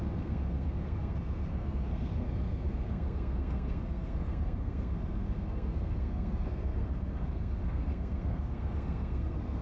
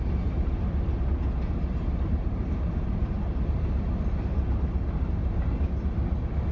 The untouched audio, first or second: second